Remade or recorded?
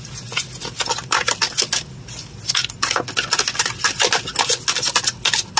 recorded